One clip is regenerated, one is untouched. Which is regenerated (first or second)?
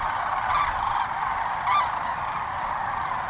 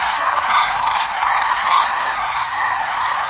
second